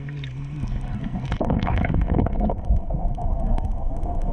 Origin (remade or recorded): remade